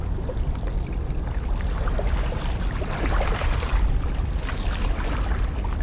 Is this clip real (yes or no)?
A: no